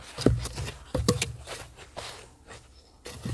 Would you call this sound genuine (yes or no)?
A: yes